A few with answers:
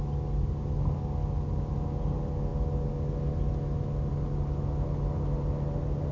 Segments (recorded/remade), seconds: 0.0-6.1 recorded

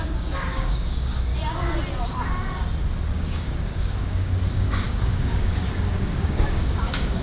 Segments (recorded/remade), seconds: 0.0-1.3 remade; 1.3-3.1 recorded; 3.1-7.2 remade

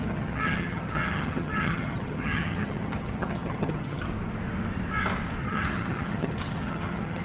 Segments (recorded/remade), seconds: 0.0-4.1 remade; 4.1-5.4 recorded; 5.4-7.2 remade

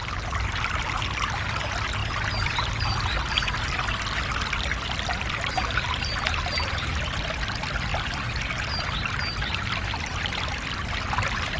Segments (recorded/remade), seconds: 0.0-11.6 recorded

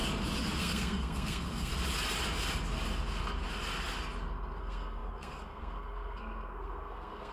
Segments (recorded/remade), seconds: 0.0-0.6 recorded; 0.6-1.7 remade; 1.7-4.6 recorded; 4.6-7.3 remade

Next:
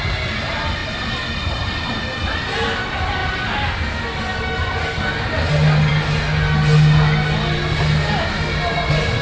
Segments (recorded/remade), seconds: 0.0-0.8 recorded; 0.8-2.0 remade; 2.0-3.2 recorded; 3.2-3.8 remade; 3.8-9.2 recorded

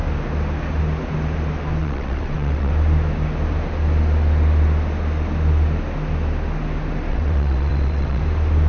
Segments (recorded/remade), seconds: 0.0-1.8 recorded; 1.8-2.7 remade; 2.7-7.1 recorded; 7.1-8.2 remade; 8.2-8.7 recorded

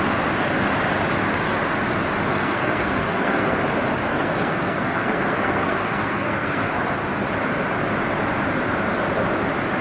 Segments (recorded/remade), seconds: 0.0-2.3 recorded; 2.3-3.6 remade; 3.6-4.1 recorded; 4.1-6.7 remade; 6.7-9.8 recorded